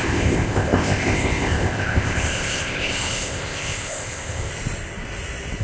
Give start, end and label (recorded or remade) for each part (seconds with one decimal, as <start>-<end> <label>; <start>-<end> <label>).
0.0-4.5 remade; 4.5-5.6 recorded